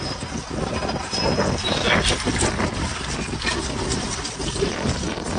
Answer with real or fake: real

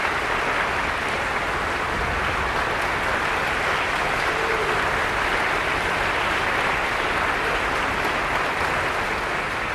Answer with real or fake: real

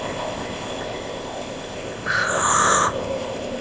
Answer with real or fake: fake